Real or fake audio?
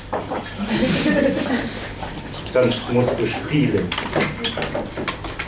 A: real